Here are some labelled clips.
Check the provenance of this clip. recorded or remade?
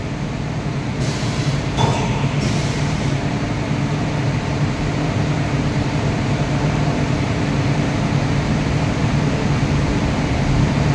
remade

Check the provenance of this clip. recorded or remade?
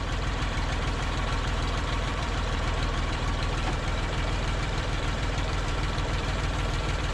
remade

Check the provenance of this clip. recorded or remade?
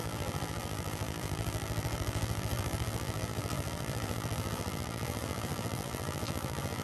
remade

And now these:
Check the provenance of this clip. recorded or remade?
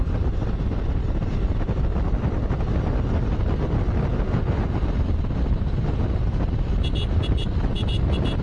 recorded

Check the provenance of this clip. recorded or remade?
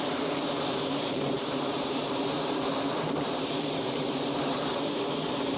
remade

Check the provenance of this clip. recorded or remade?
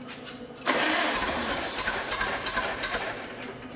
remade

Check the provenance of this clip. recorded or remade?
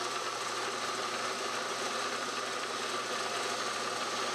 recorded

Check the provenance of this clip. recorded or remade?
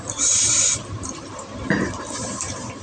remade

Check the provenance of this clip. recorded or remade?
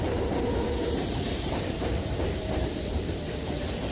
remade